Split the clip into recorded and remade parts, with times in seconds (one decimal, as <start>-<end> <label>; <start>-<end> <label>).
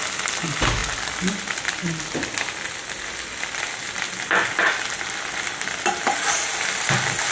0.0-7.3 recorded